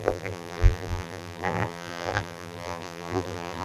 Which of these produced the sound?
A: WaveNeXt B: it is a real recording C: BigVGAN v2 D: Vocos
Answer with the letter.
C